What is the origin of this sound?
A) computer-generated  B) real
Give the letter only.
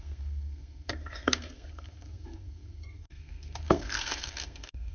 A